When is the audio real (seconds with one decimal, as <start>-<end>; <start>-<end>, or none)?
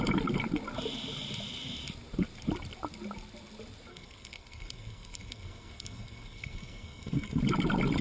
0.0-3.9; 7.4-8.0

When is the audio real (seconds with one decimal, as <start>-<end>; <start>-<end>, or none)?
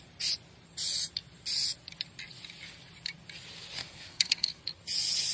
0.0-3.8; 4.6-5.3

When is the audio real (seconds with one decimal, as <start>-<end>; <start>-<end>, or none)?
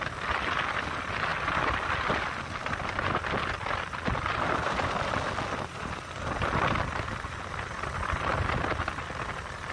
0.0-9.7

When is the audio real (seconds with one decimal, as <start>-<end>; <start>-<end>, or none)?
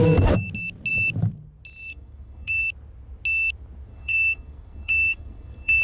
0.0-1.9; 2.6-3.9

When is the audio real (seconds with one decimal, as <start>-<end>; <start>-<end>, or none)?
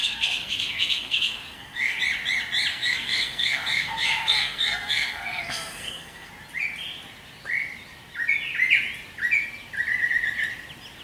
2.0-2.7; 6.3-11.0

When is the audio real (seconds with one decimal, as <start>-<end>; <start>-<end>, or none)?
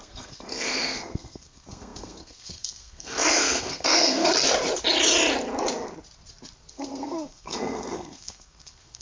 4.3-6.7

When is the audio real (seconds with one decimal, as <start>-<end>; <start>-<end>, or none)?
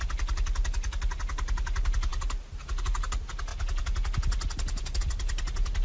0.0-5.8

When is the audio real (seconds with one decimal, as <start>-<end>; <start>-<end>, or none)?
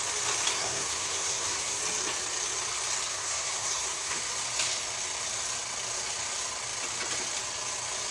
0.0-0.5; 1.8-3.1; 4.2-8.1